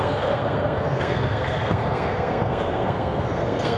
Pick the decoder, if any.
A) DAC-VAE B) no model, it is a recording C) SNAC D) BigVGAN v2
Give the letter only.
C